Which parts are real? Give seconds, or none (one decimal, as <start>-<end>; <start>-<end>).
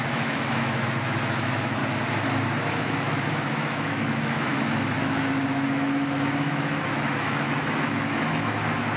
1.8-2.7